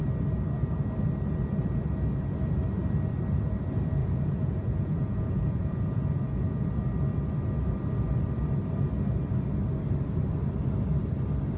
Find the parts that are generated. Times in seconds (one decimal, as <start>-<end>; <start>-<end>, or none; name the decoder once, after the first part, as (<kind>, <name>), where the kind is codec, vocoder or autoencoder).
4.0-6.7 (vocoder, Vocos)